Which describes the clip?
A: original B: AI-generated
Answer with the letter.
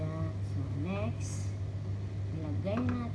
A